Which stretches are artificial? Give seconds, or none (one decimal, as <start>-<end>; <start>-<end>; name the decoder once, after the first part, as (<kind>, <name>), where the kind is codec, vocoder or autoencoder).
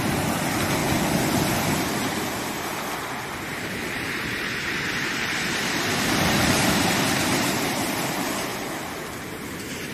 0.0-0.8 (vocoder, BigVGAN v2); 1.5-8.5; 9.3-9.9